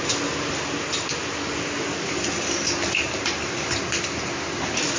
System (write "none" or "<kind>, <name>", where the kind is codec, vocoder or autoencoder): none